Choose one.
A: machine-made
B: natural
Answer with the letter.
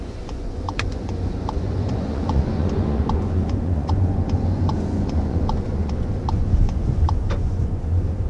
A